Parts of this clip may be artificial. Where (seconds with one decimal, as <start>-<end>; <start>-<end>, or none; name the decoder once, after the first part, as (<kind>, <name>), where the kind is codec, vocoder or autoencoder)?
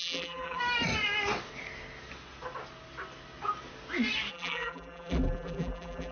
0.0-0.6 (vocoder, BigVGAN v2); 4.3-6.1